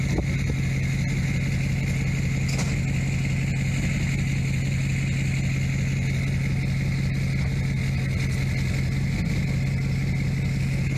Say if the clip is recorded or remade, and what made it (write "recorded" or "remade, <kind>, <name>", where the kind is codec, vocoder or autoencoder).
recorded